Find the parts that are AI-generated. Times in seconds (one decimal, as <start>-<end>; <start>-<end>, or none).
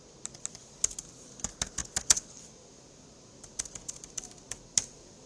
none